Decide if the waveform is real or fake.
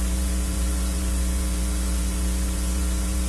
fake